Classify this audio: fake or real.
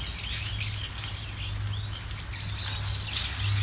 real